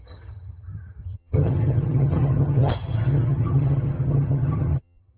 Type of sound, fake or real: fake